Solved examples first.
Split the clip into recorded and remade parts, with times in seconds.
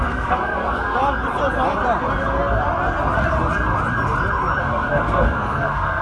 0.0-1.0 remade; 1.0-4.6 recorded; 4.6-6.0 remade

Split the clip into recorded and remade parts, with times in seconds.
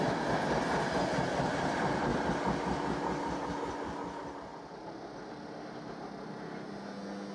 0.0-7.3 recorded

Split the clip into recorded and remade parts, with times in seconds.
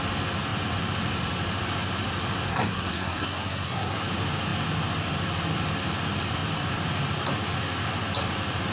0.0-2.5 recorded; 2.5-4.0 remade; 4.0-8.7 recorded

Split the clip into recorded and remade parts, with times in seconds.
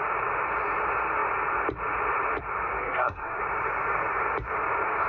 0.0-2.8 recorded; 2.8-3.4 remade; 3.4-5.1 recorded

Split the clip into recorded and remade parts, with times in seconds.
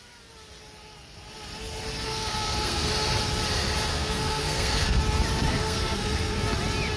0.0-2.1 recorded; 2.1-2.9 remade; 2.9-3.9 recorded; 3.9-5.0 remade; 5.0-5.5 recorded; 5.5-6.4 remade; 6.4-7.0 recorded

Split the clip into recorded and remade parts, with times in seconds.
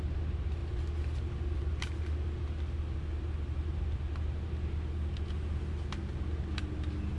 0.0-7.2 recorded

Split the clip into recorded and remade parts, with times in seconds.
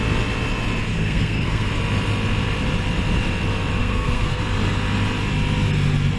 0.0-0.9 recorded; 0.9-1.7 remade; 1.7-3.8 recorded; 3.8-4.4 remade; 4.4-6.2 recorded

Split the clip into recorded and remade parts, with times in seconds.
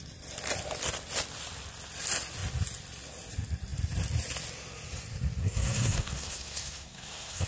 0.0-5.4 recorded; 5.4-7.5 remade